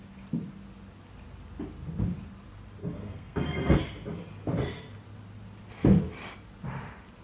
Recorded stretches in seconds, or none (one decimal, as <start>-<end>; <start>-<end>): 0.0-2.8; 3.8-7.2